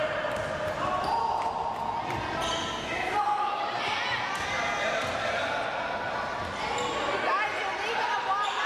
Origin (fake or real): real